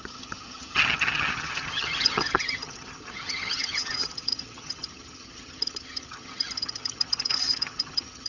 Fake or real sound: fake